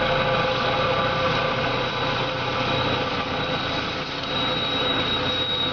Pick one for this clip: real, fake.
real